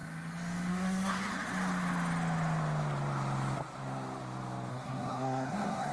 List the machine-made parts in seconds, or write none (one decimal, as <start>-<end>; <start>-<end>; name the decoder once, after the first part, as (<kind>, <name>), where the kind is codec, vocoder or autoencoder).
0.7-1.3 (codec, SNAC); 4.7-5.9